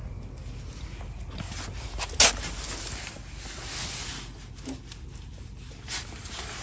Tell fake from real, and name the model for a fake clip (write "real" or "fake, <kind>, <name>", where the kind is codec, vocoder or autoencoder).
real